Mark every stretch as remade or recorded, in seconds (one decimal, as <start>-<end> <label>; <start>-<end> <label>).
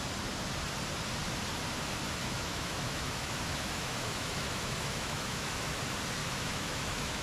0.0-2.2 recorded; 2.2-5.7 remade; 5.7-6.2 recorded; 6.2-7.2 remade